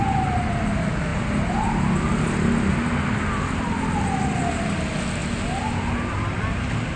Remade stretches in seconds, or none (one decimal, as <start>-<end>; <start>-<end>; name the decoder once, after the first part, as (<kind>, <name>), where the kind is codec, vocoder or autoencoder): none